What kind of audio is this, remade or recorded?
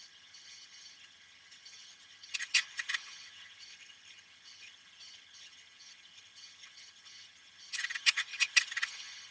remade